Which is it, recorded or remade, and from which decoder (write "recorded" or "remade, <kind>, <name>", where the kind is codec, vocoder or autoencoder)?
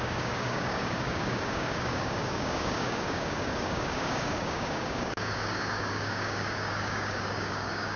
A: remade, codec, DAC